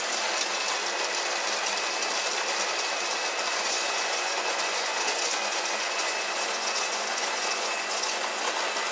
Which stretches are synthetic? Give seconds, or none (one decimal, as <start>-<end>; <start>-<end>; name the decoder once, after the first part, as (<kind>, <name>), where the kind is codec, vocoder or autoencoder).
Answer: 3.5-8.5 (vocoder, Vocos)